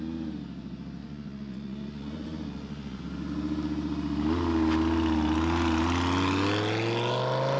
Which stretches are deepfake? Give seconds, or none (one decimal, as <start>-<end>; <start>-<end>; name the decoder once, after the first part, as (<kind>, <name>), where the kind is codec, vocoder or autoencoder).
1.0-3.0 (vocoder, Vocos)